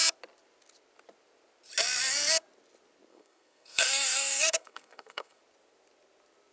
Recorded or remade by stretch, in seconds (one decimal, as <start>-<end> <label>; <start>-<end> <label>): 0.0-3.1 recorded; 3.1-5.4 remade; 5.4-6.5 recorded